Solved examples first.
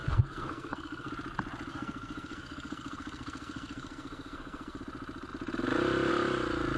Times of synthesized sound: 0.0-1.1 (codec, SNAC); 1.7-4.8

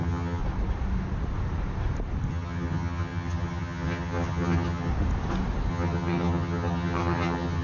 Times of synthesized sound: 0.0-0.4 (vocoder, HiFi-GAN); 2.3-4.9; 5.7-7.6

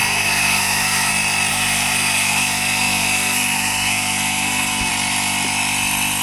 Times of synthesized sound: 0.0-1.1 (codec, SNAC); 1.5-4.9

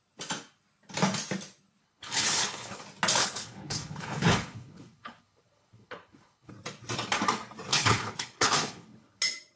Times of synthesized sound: 1.8-2.8 (codec, HILCodec); 3.2-6.5; 7.7-9.2

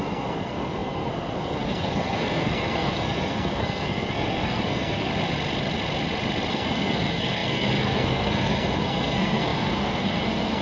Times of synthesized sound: 0.0-5.1 (codec, SNAC); 6.5-10.6

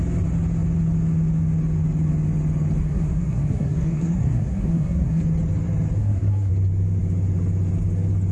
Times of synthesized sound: 2.8-5.2 (codec, SNAC); 6.0-6.5

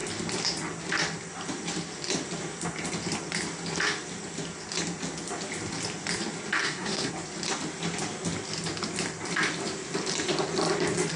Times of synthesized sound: 6.6-7.1 (codec, SNAC)

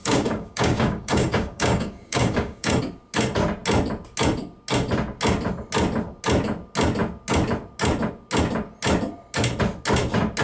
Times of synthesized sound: 0.0-2.8 (codec, DAC)